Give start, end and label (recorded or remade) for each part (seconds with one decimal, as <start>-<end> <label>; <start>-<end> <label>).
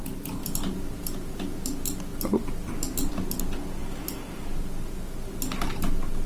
0.0-6.3 recorded